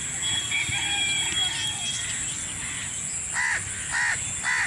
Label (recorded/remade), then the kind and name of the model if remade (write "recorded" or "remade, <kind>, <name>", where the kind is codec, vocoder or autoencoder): recorded